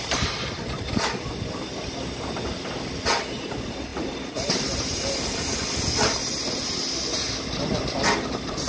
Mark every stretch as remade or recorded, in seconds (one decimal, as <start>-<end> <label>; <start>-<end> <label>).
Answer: 0.0-8.7 recorded

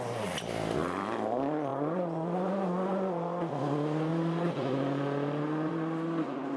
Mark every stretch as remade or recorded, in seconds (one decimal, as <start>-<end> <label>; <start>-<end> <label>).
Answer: 0.0-1.7 recorded; 1.7-3.5 remade; 3.5-4.1 recorded; 4.1-6.6 remade

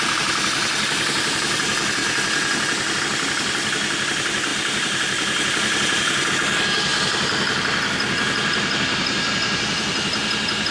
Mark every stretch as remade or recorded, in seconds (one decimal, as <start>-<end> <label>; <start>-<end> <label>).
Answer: 0.0-2.0 recorded; 2.0-3.0 remade; 3.0-4.5 recorded; 4.5-6.3 remade; 6.3-10.7 recorded

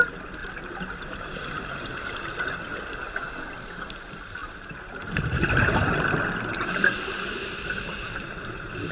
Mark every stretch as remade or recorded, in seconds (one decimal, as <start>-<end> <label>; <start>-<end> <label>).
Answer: 0.0-8.9 recorded

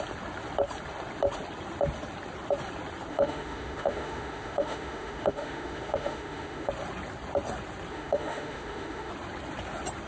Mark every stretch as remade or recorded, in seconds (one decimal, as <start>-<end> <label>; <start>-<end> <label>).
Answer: 0.0-3.1 recorded; 3.1-6.7 remade; 6.7-7.9 recorded; 7.9-9.1 remade; 9.1-10.1 recorded

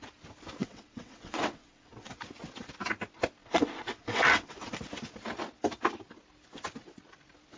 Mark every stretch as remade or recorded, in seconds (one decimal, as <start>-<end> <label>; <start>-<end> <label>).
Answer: 0.0-0.6 recorded; 0.6-2.2 remade; 2.2-3.4 recorded; 3.4-4.8 remade; 4.8-7.6 recorded